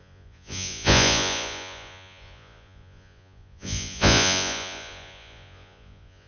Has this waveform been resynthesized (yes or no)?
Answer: yes